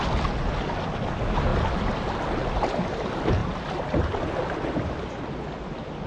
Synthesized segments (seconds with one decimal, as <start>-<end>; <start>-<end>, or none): none